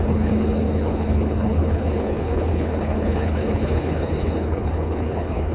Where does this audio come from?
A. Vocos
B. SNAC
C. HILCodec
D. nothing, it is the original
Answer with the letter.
C